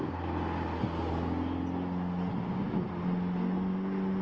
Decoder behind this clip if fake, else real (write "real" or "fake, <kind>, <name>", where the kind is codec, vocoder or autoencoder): real